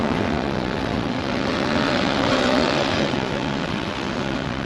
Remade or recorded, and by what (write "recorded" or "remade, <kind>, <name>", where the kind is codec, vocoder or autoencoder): remade, vocoder, WaveNeXt